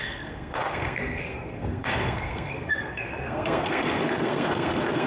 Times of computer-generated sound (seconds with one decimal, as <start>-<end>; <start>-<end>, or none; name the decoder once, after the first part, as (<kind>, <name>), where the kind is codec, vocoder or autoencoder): 0.0-5.1 (codec, SNAC)